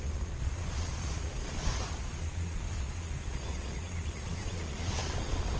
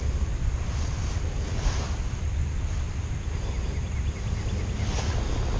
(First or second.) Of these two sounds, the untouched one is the second